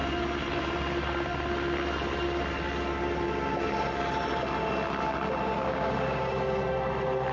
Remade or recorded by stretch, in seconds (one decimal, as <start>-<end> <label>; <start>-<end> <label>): 0.0-5.5 recorded; 5.5-6.3 remade; 6.3-7.3 recorded